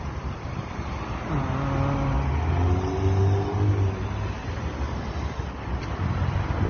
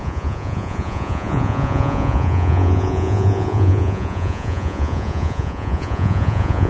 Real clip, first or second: first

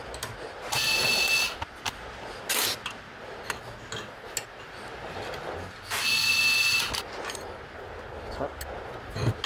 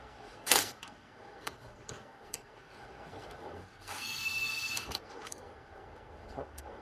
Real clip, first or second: first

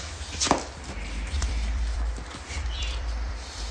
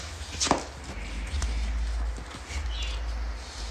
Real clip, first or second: second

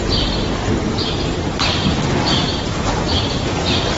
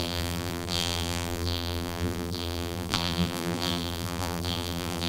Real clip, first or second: first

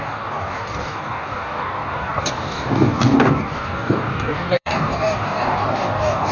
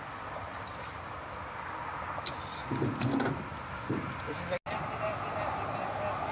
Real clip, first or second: second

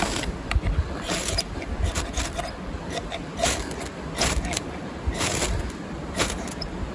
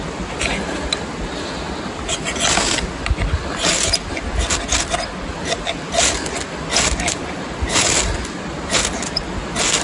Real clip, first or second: second